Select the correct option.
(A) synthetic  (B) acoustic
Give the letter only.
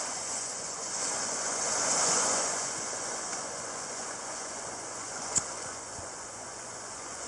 A